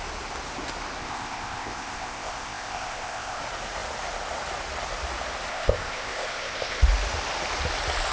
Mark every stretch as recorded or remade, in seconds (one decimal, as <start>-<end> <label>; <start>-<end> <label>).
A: 0.0-1.0 recorded; 1.0-3.4 remade; 3.4-5.5 recorded; 5.5-6.8 remade; 6.8-8.1 recorded